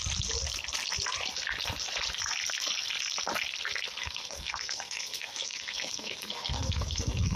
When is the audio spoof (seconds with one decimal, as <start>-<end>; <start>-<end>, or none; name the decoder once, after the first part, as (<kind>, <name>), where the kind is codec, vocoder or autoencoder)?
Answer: 4.0-7.4 (codec, SNAC)